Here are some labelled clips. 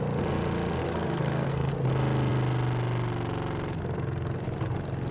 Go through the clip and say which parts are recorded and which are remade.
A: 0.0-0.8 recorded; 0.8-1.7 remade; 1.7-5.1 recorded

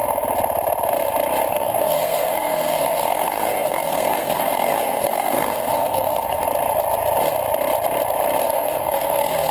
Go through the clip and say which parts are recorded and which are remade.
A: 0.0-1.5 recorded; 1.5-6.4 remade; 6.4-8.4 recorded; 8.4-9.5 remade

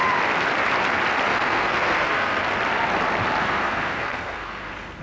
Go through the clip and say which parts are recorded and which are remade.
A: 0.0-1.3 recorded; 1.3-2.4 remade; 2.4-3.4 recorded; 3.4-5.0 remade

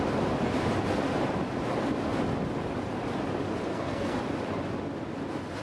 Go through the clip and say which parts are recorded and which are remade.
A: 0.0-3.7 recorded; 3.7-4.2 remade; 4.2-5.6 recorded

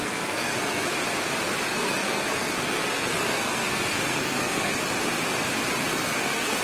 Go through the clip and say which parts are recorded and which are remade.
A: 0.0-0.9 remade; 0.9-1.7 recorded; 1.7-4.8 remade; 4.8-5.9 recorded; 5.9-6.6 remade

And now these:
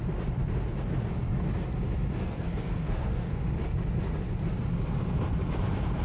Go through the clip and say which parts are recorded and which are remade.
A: 0.0-2.1 recorded; 2.1-3.5 remade; 3.5-6.0 recorded

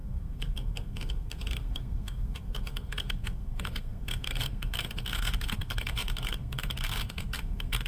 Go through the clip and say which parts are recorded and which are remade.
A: 0.0-7.9 remade

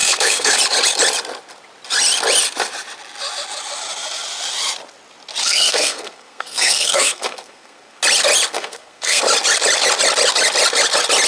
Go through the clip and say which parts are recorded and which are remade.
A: 0.0-0.6 remade; 0.6-5.4 recorded; 5.4-8.0 remade; 8.0-8.5 recorded; 8.5-9.2 remade; 9.2-11.3 recorded